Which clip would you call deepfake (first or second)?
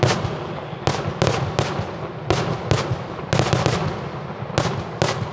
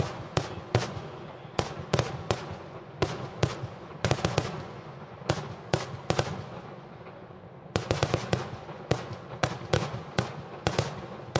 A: second